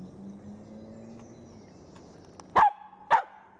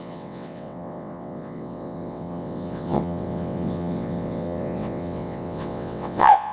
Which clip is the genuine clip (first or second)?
first